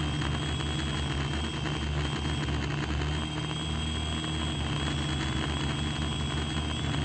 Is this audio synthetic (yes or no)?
no